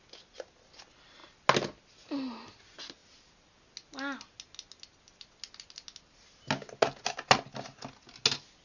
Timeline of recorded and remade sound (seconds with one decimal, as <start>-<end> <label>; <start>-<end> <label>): 0.0-8.6 recorded